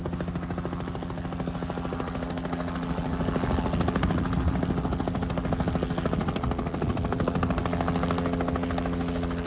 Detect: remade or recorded recorded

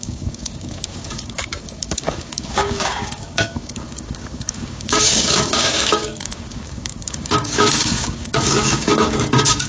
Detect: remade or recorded remade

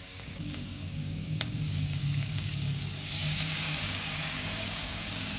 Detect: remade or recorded remade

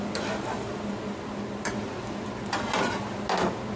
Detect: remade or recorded recorded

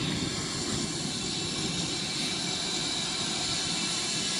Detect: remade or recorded recorded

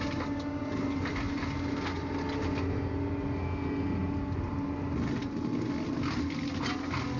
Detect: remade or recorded recorded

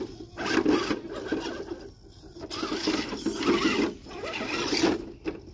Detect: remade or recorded recorded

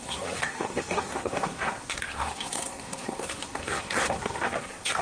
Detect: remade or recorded remade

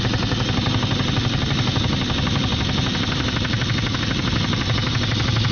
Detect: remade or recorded recorded